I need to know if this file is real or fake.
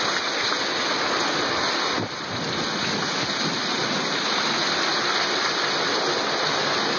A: real